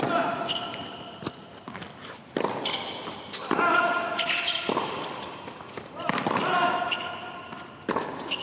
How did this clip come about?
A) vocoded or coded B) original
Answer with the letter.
B